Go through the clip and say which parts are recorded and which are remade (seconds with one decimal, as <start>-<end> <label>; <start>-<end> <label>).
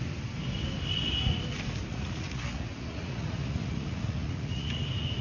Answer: 0.0-1.9 recorded; 1.9-4.8 remade; 4.8-5.2 recorded